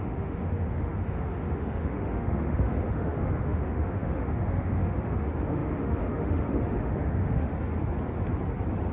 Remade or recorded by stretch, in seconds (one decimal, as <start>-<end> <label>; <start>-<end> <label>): 0.0-7.5 remade; 7.5-8.9 recorded